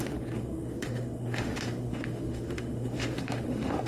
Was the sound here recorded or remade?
remade